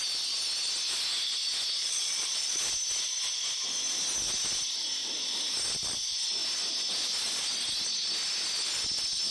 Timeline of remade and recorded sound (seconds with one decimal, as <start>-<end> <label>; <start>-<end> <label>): 0.0-1.8 recorded; 1.8-2.6 remade; 2.6-9.3 recorded